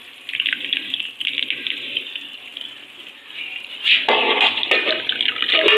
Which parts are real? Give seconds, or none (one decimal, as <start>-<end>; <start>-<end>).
0.0-5.8